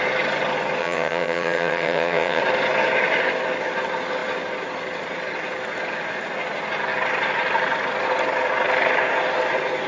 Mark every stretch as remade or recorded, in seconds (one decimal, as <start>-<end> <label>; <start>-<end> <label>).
0.0-0.8 recorded; 0.8-2.4 remade; 2.4-9.9 recorded